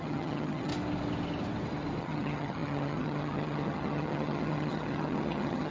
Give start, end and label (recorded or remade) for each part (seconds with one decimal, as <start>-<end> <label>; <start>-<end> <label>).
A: 0.0-0.7 remade; 0.7-2.0 recorded; 2.0-5.7 remade